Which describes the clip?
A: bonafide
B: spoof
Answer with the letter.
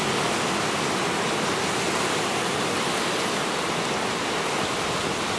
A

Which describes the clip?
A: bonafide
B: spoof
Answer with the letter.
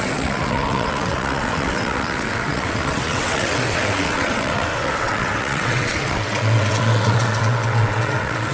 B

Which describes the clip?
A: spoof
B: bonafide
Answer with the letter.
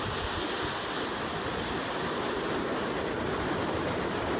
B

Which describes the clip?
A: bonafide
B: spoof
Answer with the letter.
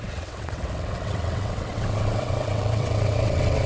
B